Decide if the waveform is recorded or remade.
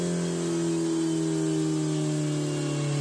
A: recorded